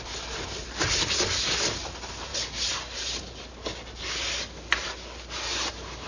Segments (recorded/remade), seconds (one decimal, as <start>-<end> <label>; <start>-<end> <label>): 0.0-6.1 recorded